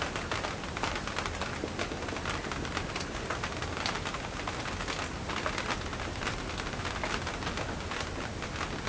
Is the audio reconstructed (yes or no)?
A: no